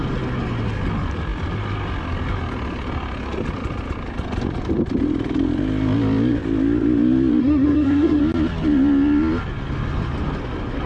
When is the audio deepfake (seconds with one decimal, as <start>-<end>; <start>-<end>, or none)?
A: 7.4-8.2